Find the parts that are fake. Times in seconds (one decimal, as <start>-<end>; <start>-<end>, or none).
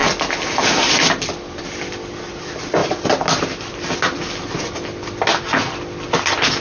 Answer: none